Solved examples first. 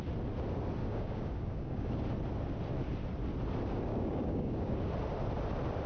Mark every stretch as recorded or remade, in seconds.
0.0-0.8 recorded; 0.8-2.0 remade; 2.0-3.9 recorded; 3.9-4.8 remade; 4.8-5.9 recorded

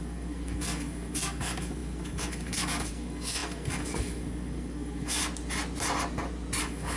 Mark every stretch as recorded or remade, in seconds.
0.0-5.2 remade; 5.2-6.6 recorded; 6.6-7.0 remade

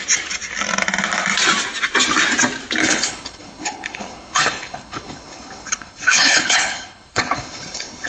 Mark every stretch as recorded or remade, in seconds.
0.0-2.8 recorded; 2.8-8.1 remade

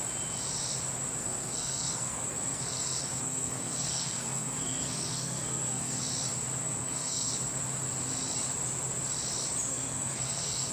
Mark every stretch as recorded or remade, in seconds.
0.0-1.2 recorded; 1.2-6.0 remade; 6.0-6.6 recorded; 6.6-7.3 remade; 7.3-9.7 recorded; 9.7-10.7 remade

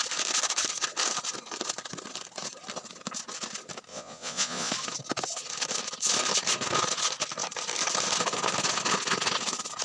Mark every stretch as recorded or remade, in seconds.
0.0-3.9 recorded; 3.9-4.7 remade; 4.7-9.8 recorded